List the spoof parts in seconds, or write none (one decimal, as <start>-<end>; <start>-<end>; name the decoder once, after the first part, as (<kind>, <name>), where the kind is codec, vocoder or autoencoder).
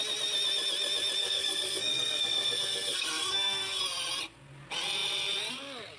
1.2-3.8 (codec, SNAC)